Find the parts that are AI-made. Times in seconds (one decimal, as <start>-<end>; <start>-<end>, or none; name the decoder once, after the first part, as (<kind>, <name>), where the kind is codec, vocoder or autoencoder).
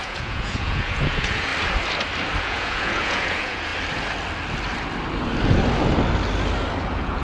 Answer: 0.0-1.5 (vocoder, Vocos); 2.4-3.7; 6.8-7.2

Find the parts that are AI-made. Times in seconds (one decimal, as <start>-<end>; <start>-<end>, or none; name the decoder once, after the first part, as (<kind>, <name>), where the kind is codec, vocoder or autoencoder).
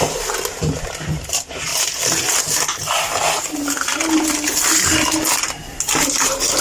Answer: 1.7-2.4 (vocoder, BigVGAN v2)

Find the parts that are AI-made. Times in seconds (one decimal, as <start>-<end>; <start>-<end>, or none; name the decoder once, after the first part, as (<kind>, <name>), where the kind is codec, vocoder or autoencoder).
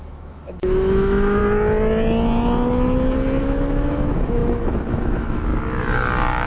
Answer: 0.0-1.4 (autoencoder, DAC-VAE); 3.4-5.5